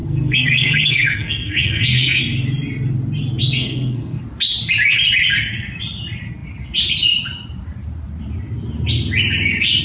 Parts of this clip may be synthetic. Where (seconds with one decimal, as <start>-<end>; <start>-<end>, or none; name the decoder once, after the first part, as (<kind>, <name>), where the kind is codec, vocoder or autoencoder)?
0.0-2.2 (codec, SNAC); 3.4-4.2